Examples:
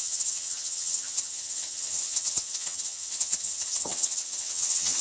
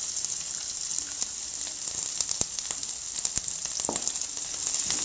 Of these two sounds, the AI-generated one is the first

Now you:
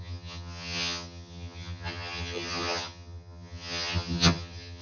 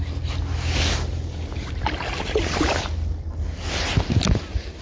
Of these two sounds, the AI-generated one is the first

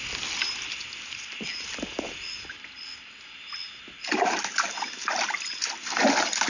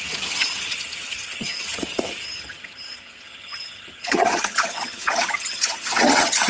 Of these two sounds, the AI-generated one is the second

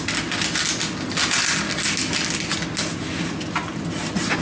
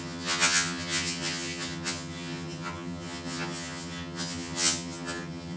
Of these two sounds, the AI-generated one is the second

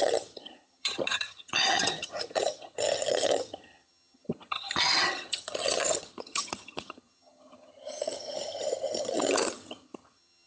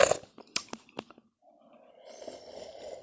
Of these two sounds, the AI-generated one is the first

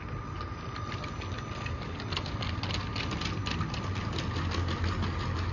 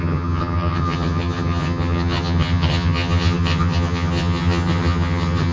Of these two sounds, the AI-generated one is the second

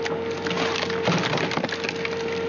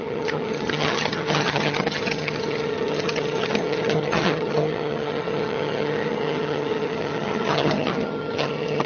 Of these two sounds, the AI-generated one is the second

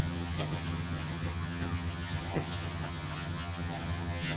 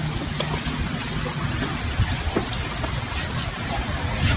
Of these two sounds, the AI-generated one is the first